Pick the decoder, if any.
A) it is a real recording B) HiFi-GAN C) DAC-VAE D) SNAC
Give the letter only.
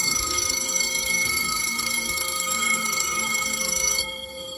D